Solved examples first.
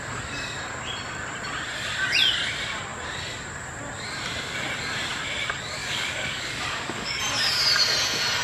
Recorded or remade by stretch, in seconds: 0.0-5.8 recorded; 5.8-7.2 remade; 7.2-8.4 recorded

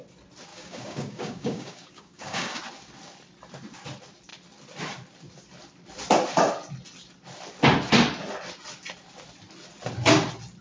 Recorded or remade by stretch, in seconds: 0.0-0.5 recorded; 0.5-2.6 remade; 2.6-10.6 recorded

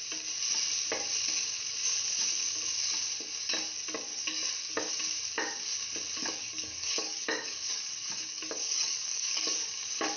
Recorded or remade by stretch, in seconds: 0.0-4.1 recorded; 4.1-4.9 remade; 4.9-6.2 recorded; 6.2-10.2 remade